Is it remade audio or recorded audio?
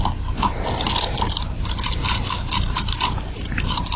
recorded